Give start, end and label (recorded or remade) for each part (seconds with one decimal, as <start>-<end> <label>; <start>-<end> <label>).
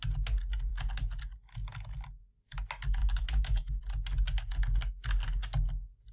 0.0-3.0 recorded; 3.0-3.8 remade; 3.8-6.1 recorded